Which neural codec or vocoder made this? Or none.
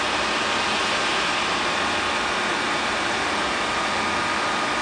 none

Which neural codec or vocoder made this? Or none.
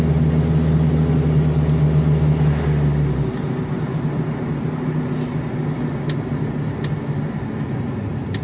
none